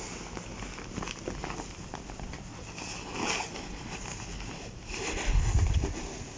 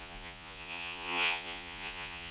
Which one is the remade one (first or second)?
second